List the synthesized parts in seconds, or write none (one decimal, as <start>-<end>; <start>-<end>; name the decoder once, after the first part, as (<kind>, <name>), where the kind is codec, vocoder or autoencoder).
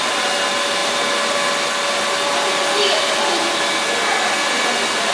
none